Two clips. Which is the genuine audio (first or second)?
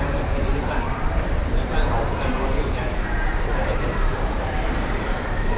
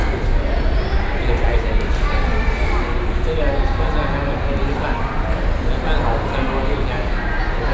second